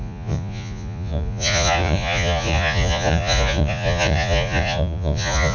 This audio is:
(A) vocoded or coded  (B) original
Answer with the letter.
A